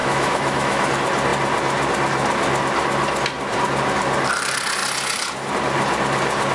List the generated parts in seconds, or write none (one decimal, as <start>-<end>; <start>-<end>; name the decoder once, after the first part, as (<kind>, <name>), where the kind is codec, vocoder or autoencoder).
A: 0.0-0.9 (autoencoder, DAC-VAE)